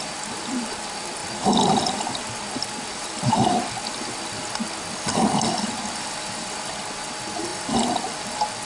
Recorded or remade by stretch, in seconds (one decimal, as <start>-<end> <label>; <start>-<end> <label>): 0.0-1.2 recorded; 1.2-2.5 remade; 2.5-8.6 recorded

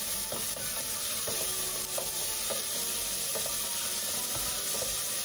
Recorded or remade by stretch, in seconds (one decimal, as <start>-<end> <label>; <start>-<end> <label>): 0.0-5.2 remade

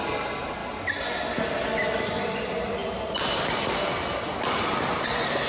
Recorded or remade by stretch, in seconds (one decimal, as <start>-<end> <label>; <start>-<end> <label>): 0.0-5.5 recorded